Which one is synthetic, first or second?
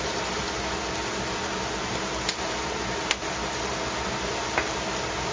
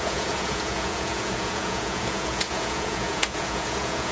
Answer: second